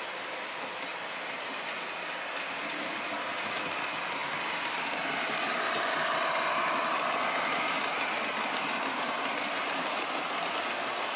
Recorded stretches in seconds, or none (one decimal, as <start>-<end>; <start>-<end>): 0.0-11.2

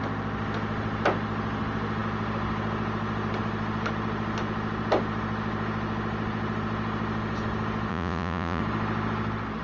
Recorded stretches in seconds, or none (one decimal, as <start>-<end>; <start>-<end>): 0.0-7.9; 8.6-9.6

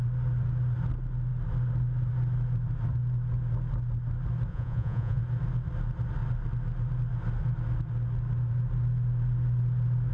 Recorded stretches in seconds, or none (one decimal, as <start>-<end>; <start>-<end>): 0.0-4.5; 5.2-10.1

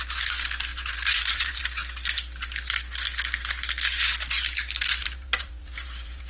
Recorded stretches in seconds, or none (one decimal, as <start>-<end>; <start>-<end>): 0.0-0.7; 1.6-5.0